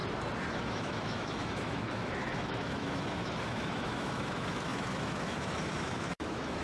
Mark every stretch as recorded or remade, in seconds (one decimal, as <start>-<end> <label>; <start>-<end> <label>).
0.0-0.5 recorded; 0.5-6.6 remade